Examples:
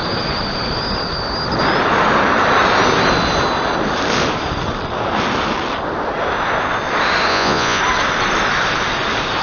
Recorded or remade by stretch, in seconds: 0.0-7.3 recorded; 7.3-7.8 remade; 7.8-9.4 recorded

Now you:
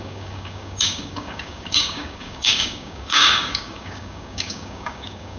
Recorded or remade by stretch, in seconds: 0.0-5.4 remade